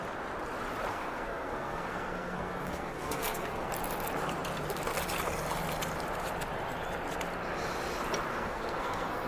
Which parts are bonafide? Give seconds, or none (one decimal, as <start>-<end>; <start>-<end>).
0.0-0.9; 3.7-8.3